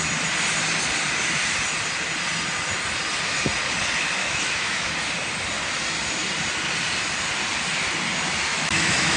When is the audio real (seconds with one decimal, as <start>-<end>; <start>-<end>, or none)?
0.0-4.2; 4.9-8.5